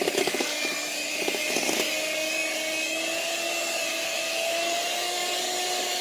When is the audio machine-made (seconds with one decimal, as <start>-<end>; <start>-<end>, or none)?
0.0-6.0